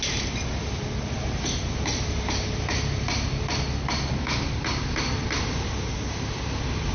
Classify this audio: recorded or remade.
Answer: recorded